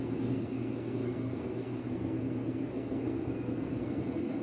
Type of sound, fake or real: fake